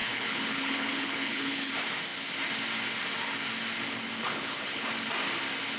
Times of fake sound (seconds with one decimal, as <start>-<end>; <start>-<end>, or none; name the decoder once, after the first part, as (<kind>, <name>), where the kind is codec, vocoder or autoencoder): 0.0-1.7 (codec, HILCodec); 4.2-4.9